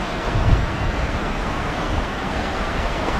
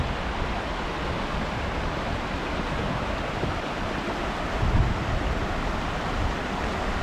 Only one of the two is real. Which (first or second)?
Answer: second